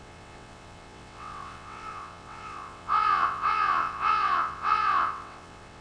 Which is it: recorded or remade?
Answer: remade